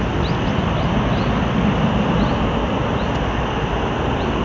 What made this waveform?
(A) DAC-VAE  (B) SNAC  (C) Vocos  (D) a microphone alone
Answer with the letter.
D